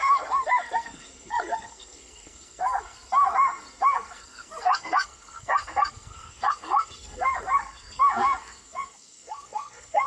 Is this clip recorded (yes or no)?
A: no